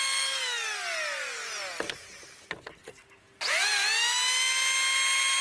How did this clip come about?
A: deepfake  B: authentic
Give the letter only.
B